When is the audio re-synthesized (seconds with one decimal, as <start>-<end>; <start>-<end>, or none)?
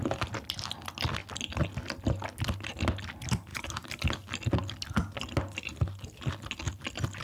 3.5-4.0